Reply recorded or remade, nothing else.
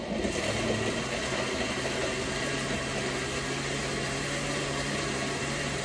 recorded